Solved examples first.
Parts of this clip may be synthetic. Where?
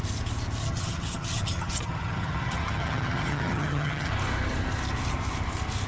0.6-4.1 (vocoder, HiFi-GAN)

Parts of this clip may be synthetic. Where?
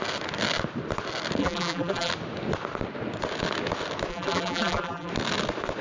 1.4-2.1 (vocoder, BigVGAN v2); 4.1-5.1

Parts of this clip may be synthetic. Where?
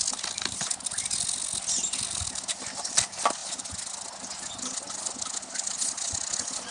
none